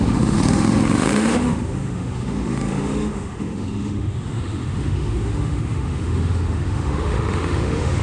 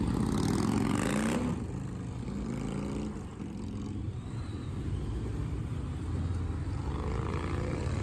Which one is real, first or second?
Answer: second